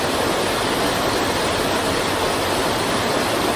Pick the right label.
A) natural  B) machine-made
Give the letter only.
A